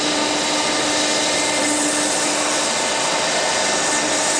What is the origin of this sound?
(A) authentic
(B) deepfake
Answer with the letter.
A